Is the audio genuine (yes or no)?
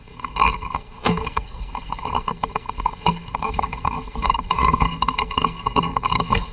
no